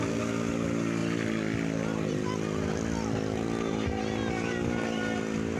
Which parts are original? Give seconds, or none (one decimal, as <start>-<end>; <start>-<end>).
0.0-5.6

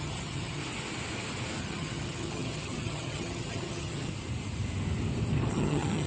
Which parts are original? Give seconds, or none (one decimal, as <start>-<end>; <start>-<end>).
0.6-1.6; 4.1-5.5

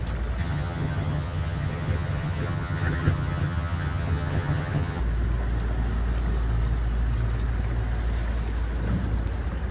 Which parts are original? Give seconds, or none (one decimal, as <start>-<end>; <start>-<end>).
0.0-0.4; 5.0-9.7

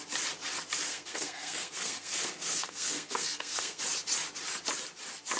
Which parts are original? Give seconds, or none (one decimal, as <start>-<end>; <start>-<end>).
0.0-0.9; 3.8-5.4

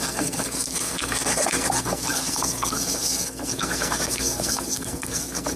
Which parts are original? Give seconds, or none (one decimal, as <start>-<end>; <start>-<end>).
none

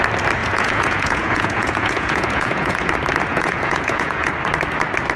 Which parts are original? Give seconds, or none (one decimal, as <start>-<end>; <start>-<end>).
0.0-0.4; 2.9-3.3; 4.3-5.2

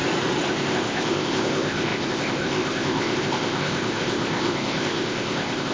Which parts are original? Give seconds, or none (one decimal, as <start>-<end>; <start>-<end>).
0.0-0.5